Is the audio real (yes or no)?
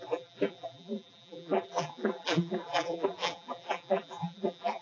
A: no